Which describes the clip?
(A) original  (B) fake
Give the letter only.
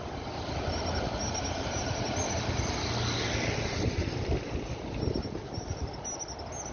A